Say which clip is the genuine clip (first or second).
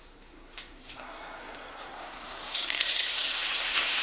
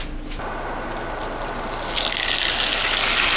second